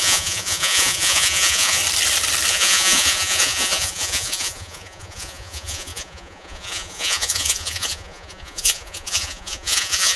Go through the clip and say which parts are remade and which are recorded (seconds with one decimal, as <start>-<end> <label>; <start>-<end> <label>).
0.0-1.8 remade; 1.8-2.5 recorded; 2.5-10.2 remade